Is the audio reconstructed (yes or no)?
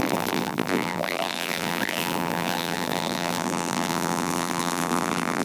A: yes